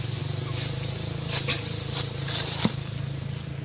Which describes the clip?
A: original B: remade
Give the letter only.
A